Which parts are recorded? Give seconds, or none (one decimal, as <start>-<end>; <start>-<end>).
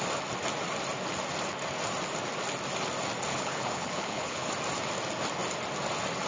0.0-3.3; 4.5-6.3